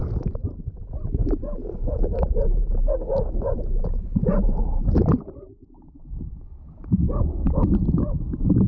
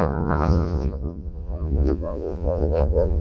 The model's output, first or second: second